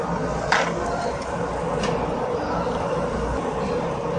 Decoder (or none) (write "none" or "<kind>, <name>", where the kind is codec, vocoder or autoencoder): none